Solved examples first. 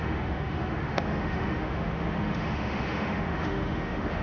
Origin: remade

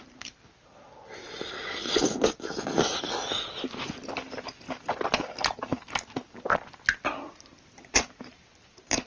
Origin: recorded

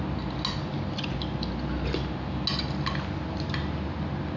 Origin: recorded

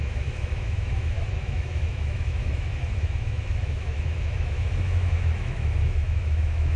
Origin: remade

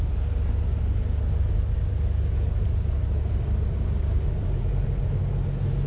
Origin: recorded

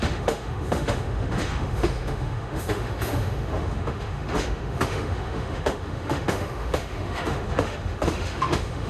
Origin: remade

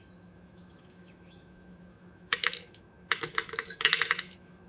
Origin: remade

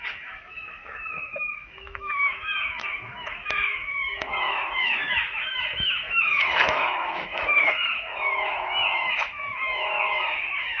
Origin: remade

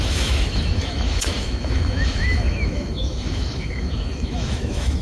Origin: remade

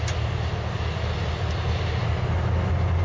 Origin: recorded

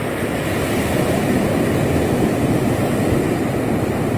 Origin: recorded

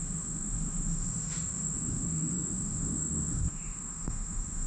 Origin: remade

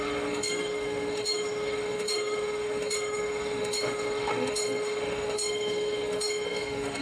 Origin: remade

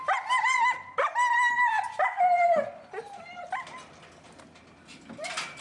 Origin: recorded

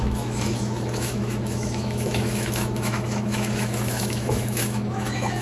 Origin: remade